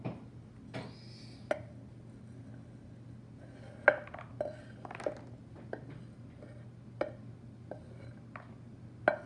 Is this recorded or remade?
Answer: recorded